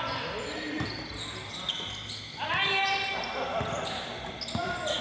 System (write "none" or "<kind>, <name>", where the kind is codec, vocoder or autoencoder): none